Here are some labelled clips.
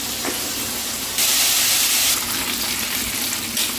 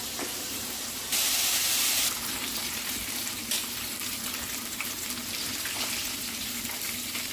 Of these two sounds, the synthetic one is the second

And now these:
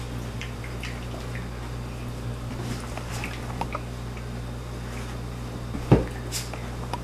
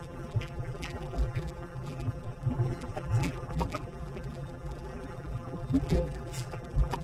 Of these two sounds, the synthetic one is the second